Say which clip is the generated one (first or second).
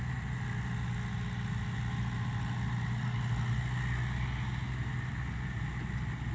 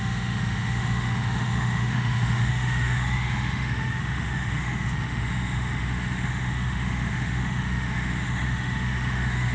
second